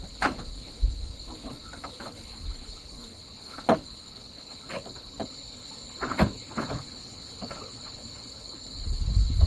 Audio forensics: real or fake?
fake